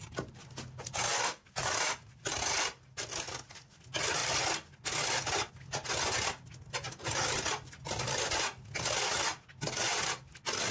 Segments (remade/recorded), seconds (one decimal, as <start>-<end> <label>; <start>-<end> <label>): 0.0-10.7 recorded